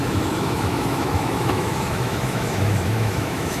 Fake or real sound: fake